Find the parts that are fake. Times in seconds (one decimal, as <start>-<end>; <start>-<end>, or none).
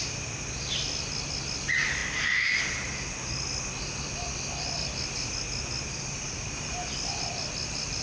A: none